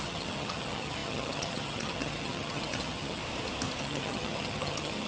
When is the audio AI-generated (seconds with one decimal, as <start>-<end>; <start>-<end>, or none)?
0.0-3.2; 3.8-5.1